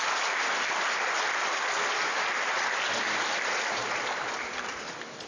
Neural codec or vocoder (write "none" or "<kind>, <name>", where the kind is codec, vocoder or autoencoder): none